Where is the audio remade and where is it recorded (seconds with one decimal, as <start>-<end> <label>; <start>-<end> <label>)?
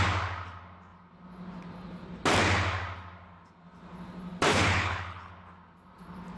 0.0-4.5 recorded; 4.5-5.3 remade; 5.3-6.4 recorded